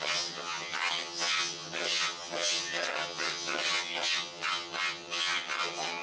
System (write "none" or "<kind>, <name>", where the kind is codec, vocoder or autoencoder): vocoder, HiFi-GAN